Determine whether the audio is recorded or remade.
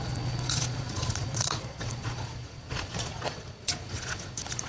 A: remade